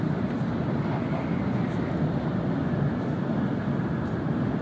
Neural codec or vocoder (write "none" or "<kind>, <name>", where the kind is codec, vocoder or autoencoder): none